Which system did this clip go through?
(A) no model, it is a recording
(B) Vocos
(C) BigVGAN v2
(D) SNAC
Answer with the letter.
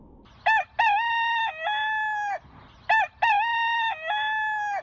A